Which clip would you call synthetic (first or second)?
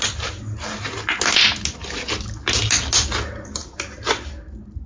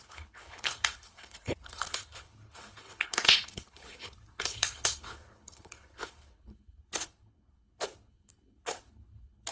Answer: second